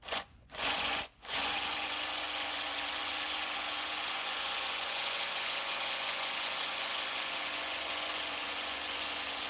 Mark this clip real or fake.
fake